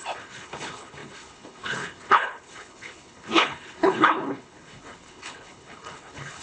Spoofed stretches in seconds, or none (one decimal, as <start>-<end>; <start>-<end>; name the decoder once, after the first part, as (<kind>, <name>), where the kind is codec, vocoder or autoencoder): 0.0-6.4 (codec, HILCodec)